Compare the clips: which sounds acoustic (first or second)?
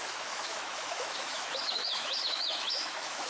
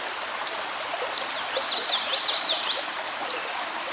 second